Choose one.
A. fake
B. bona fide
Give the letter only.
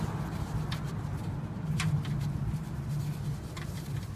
B